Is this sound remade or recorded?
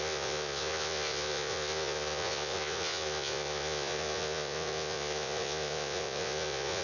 remade